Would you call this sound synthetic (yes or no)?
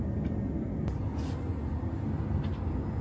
no